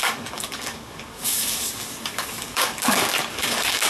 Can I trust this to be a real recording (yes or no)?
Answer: no